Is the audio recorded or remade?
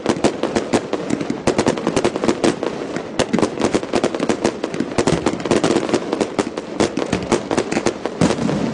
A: recorded